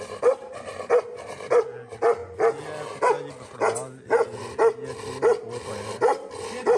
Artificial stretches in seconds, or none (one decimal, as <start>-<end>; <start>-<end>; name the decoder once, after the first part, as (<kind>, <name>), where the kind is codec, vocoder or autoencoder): none